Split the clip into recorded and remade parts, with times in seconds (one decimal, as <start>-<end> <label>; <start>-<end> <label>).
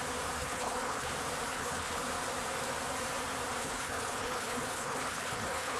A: 0.0-0.4 recorded; 0.4-1.1 remade; 1.1-1.5 recorded; 1.5-2.0 remade; 2.0-3.6 recorded; 3.6-5.8 remade